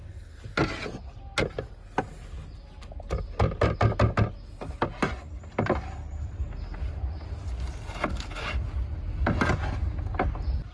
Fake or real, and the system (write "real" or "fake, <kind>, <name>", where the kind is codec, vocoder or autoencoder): real